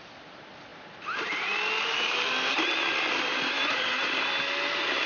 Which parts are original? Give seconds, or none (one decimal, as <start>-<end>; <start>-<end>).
0.0-5.1